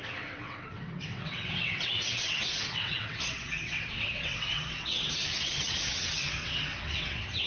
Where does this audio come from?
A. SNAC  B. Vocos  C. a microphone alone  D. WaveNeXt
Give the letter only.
D